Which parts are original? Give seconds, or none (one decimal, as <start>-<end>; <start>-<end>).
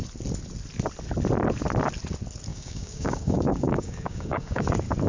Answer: 0.0-2.5; 4.6-5.1